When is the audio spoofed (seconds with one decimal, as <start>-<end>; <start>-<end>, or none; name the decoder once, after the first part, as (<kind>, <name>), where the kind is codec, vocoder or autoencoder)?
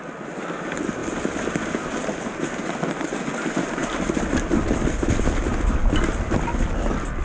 none